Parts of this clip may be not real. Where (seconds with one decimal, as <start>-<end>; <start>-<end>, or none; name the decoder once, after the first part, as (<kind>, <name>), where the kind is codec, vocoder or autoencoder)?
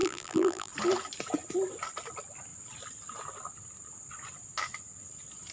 0.0-0.7 (vocoder, BigVGAN v2)